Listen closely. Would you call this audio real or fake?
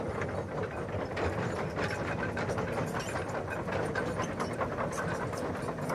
real